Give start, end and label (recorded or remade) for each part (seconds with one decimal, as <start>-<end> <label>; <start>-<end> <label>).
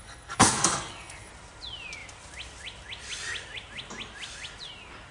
0.0-1.3 remade; 1.3-5.1 recorded